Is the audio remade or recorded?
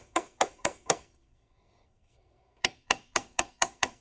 remade